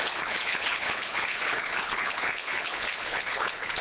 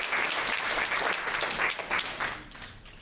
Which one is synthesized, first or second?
first